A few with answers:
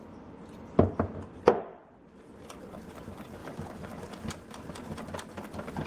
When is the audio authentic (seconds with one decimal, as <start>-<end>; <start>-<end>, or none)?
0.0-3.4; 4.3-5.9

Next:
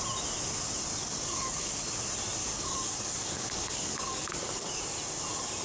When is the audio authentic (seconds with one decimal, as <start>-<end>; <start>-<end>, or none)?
0.0-1.0; 1.8-2.4; 4.8-5.6

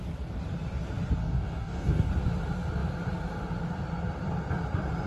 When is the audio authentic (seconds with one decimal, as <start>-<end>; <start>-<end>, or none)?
0.0-1.2; 2.1-5.1

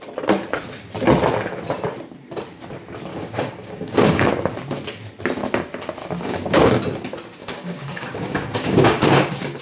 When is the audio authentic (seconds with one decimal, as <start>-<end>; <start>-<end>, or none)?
0.0-3.1; 4.3-6.0; 6.7-7.4